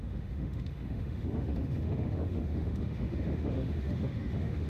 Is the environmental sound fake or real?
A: fake